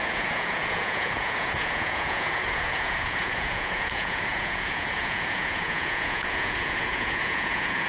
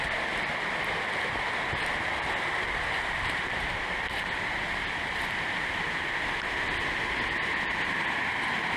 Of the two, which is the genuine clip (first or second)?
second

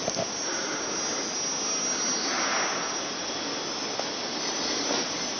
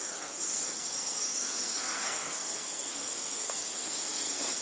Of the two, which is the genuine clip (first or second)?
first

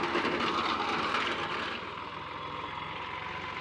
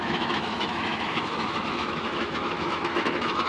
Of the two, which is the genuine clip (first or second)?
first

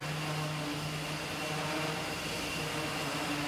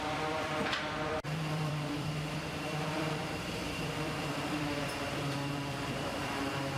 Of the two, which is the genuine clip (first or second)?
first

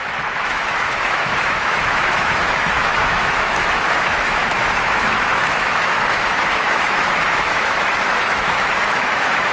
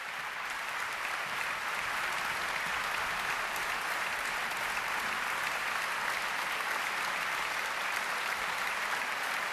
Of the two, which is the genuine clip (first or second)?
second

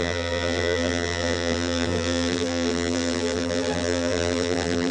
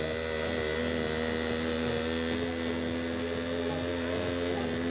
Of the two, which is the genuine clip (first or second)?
second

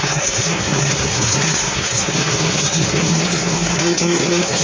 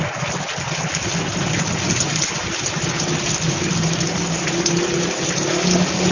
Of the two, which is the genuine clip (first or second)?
second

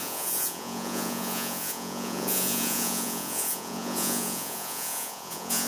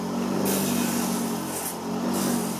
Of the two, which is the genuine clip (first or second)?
second